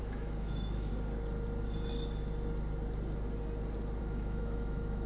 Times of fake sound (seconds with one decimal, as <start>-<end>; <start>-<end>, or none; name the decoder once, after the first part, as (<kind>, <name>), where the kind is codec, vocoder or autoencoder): 0.0-0.9 (autoencoder, DAC-VAE); 4.0-5.1